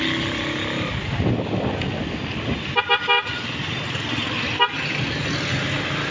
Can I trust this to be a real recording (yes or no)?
yes